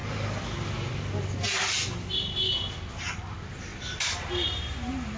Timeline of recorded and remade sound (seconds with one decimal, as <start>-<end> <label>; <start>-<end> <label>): 0.0-5.2 recorded

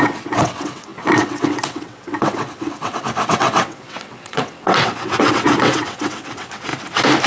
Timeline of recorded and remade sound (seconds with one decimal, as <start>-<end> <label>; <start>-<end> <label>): 0.0-6.7 remade; 6.7-7.3 recorded

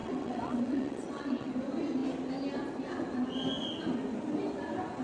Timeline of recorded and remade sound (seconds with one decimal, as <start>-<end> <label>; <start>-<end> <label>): 0.0-1.5 remade; 1.5-5.0 recorded

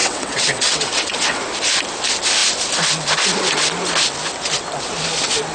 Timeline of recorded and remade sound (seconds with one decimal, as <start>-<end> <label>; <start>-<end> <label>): 0.0-1.4 remade; 1.4-5.5 recorded